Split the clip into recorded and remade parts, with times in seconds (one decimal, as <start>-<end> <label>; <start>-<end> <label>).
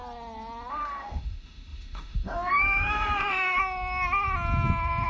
0.0-0.7 recorded; 0.7-3.6 remade; 3.6-5.1 recorded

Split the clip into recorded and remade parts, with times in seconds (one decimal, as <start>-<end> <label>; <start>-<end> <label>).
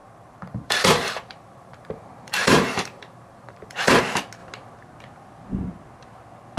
0.0-4.0 remade; 4.0-6.6 recorded